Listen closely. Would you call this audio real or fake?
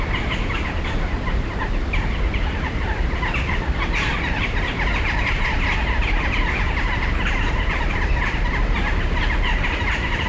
fake